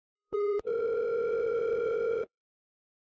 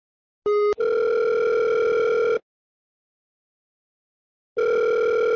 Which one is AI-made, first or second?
first